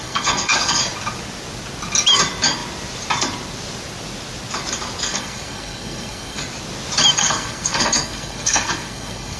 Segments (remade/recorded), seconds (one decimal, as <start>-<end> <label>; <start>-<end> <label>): 0.0-0.8 remade; 0.8-5.1 recorded; 5.1-6.4 remade; 6.4-7.2 recorded; 7.2-9.4 remade